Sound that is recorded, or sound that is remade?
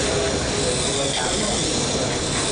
recorded